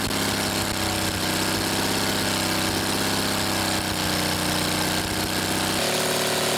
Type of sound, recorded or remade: recorded